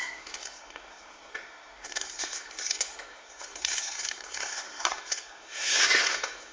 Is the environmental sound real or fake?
fake